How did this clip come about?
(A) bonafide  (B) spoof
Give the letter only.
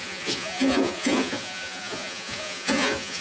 B